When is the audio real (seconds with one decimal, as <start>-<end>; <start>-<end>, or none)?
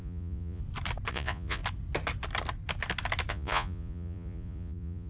0.6-1.1; 1.6-3.3